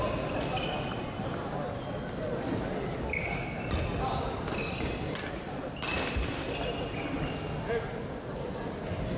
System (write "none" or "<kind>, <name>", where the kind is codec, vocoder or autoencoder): none